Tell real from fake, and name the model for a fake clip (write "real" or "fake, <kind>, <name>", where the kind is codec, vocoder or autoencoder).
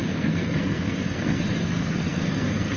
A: fake, codec, SNAC